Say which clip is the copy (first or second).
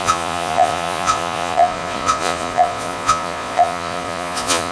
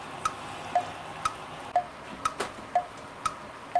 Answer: first